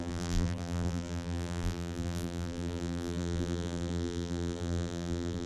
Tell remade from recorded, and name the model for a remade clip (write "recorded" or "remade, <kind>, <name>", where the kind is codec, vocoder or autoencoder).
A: remade, vocoder, BigVGAN v2